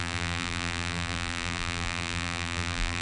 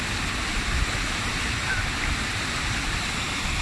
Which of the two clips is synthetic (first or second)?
first